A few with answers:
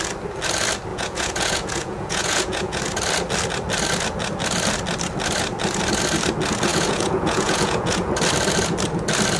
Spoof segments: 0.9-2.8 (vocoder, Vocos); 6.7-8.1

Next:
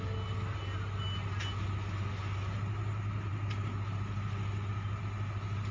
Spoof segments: none

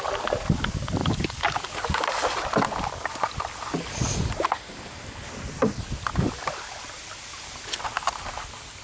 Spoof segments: 1.0-2.2 (codec, DAC)

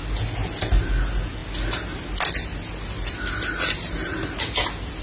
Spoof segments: none

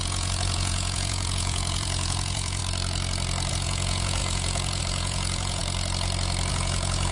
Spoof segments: 0.0-2.6 (vocoder, Vocos); 3.5-5.6; 6.5-7.1

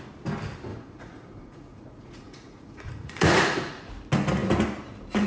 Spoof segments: 0.7-3.9 (vocoder, Vocos)